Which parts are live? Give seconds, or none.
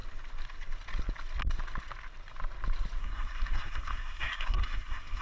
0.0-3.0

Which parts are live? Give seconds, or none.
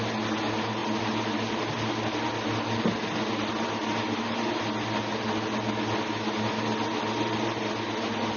0.0-8.4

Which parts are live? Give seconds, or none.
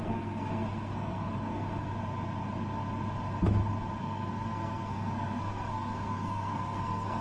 1.9-4.0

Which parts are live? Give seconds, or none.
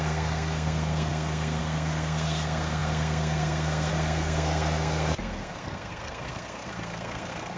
none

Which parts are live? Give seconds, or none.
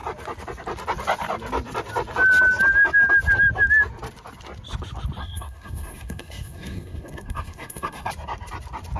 0.0-5.2; 8.1-9.0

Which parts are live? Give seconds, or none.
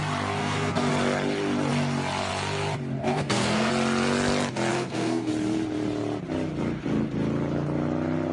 0.0-0.4; 0.9-3.0; 3.7-4.7; 5.3-8.3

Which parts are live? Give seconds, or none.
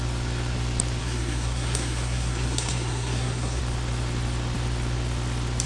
0.0-1.0; 3.6-5.7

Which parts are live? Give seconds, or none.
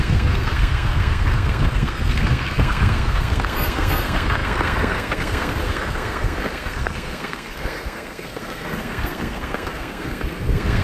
none